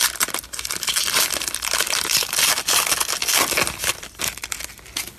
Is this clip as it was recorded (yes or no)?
yes